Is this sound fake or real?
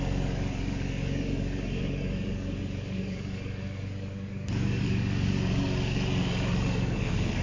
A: fake